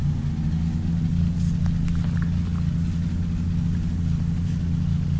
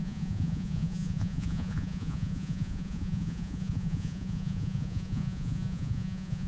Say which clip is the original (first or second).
first